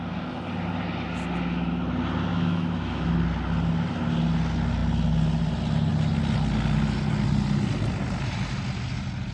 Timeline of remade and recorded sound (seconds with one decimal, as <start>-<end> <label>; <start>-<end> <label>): 0.0-2.3 recorded; 2.3-3.1 remade; 3.1-9.3 recorded